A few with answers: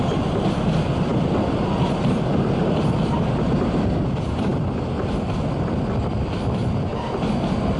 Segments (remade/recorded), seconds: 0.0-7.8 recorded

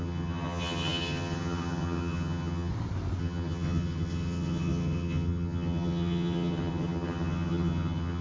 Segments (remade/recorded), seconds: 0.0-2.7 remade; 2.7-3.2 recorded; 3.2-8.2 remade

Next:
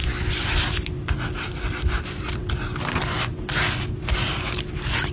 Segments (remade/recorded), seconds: 0.0-5.1 recorded